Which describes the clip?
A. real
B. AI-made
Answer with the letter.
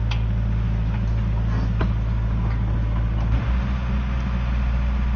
A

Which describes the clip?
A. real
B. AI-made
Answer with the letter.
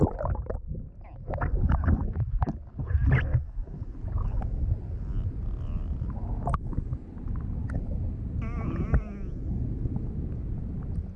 A